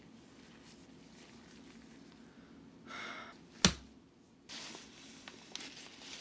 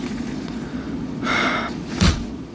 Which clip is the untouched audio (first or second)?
first